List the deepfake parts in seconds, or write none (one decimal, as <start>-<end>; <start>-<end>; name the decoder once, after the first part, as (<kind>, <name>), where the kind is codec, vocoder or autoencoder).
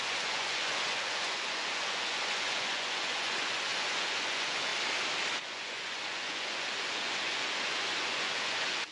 0.0-4.7 (vocoder, Vocos); 5.3-8.9